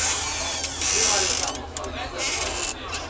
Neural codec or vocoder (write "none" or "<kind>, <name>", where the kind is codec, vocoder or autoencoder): none